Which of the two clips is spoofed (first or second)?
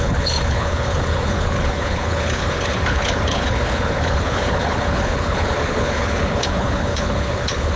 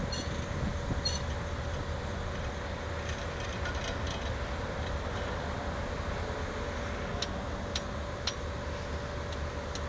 first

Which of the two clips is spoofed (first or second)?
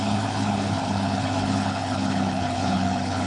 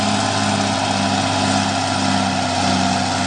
first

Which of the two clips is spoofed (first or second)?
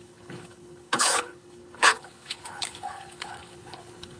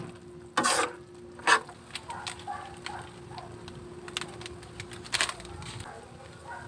first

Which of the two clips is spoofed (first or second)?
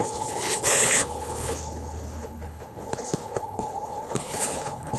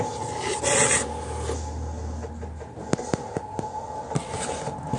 first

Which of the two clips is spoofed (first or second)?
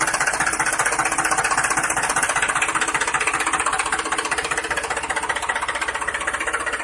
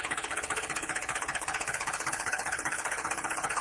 second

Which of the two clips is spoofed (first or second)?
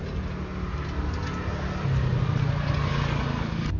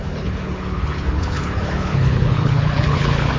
second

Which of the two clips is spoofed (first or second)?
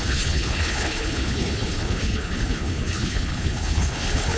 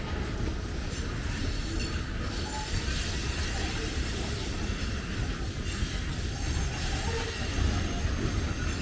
first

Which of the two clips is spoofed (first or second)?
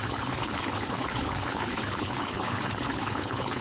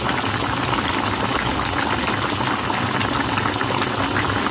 first